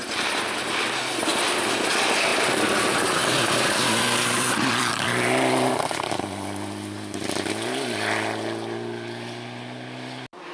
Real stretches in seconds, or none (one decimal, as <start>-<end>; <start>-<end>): 0.0-1.3; 1.9-2.3; 5.7-10.5